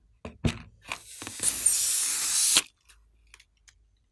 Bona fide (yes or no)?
yes